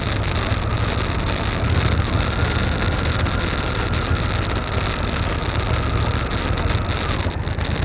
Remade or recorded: recorded